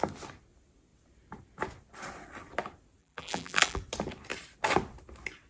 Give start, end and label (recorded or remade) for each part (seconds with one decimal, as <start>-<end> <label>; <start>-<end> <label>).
0.0-3.0 recorded; 3.0-3.8 remade; 3.8-5.5 recorded